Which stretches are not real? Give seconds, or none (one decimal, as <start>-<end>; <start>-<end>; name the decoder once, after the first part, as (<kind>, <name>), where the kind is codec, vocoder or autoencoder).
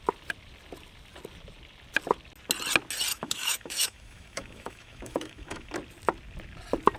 3.1-5.7 (autoencoder, DAC-VAE)